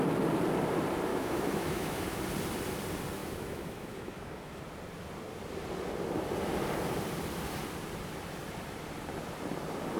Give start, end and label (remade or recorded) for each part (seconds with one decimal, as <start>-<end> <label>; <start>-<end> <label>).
0.0-1.1 recorded; 1.1-2.2 remade; 2.2-3.2 recorded; 3.2-4.6 remade; 4.6-10.0 recorded